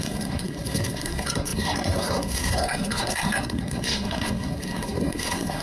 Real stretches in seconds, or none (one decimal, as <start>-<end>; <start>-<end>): none

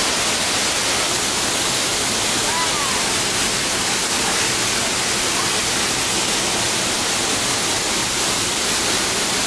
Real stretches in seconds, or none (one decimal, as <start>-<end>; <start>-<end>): 0.0-9.5

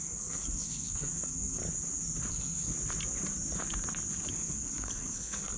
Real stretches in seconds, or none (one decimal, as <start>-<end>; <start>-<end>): 1.6-2.3; 2.7-4.3

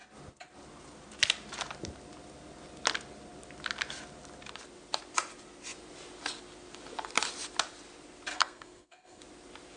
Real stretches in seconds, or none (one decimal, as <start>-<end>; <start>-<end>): 0.0-8.3; 9.2-9.8

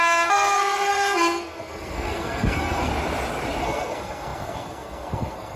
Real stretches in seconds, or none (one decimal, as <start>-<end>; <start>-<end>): 2.9-3.6

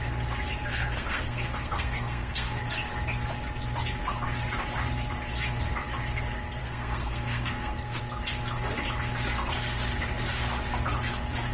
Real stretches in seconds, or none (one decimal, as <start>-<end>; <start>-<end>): 0.0-0.6; 2.6-6.6; 8.0-11.5

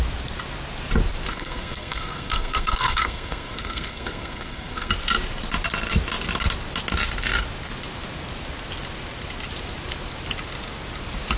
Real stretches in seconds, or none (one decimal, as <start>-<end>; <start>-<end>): 0.0-1.3; 4.9-11.4

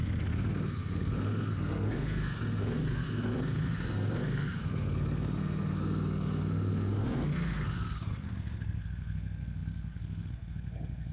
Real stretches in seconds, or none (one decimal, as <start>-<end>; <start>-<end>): none